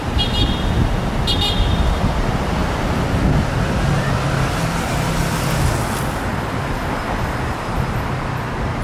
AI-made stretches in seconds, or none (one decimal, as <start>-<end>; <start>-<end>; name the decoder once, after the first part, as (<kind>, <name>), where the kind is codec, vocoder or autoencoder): none